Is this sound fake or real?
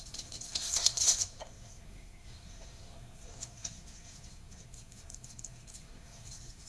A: fake